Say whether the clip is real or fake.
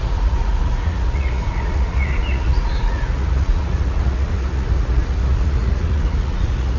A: fake